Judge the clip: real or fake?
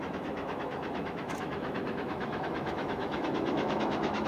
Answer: fake